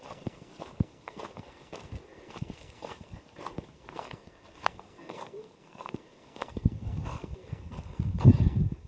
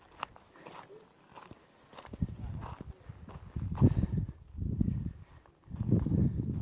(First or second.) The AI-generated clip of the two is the first